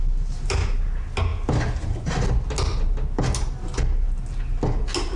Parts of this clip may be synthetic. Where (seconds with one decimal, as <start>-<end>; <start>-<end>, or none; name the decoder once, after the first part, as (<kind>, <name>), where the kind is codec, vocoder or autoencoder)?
none